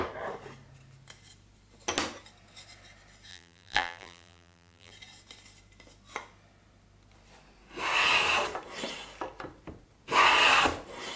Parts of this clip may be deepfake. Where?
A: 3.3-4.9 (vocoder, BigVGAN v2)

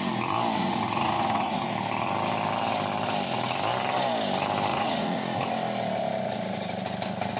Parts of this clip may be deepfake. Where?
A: 0.6-1.7 (vocoder, Vocos); 4.7-5.4

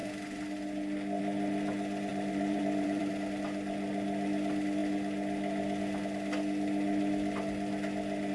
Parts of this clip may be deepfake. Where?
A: 2.1-3.1 (vocoder, BigVGAN v2)

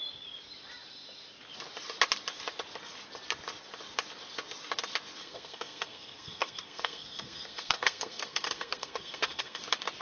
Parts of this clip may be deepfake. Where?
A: 5.2-9.6 (codec, SNAC)

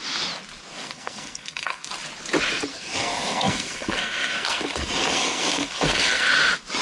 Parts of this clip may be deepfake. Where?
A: 0.7-1.9 (codec, SNAC); 2.7-6.3

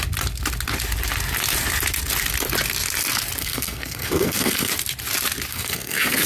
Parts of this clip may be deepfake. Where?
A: 3.4-4.7 (codec, SNAC); 5.5-6.3